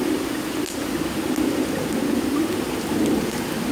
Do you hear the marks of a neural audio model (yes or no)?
no